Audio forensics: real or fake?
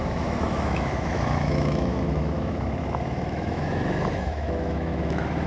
fake